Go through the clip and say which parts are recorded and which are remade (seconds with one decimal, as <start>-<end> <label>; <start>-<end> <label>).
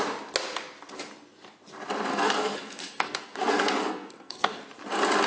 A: 0.0-2.1 recorded; 2.1-4.6 remade; 4.6-5.3 recorded